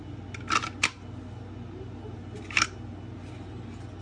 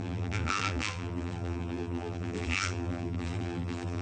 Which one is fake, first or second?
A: second